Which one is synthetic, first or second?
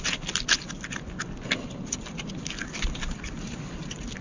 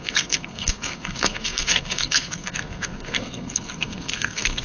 second